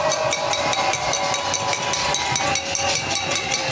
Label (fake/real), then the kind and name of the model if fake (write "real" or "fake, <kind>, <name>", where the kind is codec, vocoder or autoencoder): real